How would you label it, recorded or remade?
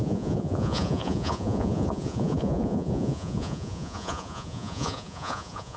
remade